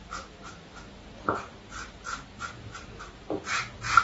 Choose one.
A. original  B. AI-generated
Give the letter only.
A